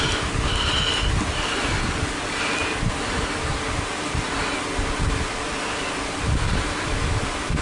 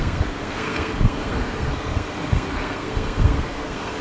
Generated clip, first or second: second